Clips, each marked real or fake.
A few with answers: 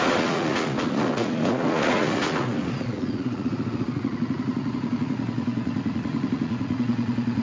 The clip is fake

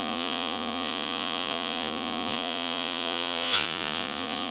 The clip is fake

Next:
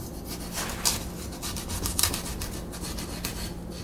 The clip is real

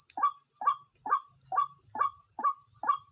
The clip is real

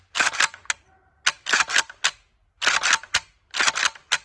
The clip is real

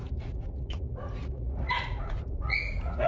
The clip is fake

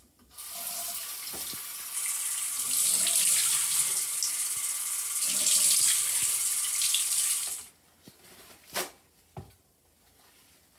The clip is real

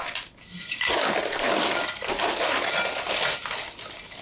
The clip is real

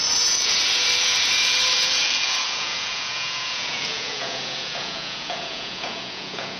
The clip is fake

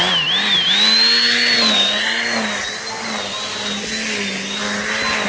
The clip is real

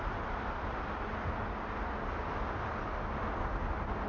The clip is real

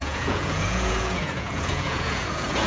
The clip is fake